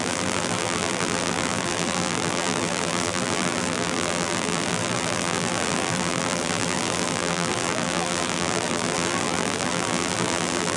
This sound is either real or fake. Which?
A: fake